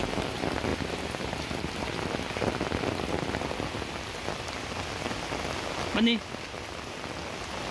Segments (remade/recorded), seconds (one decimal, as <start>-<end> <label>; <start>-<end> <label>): 0.0-7.7 recorded